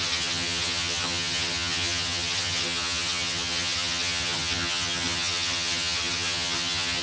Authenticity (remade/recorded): remade